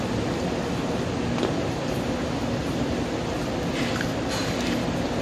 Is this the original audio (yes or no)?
yes